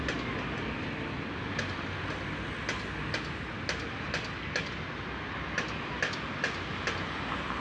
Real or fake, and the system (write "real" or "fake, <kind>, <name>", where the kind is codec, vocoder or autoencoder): real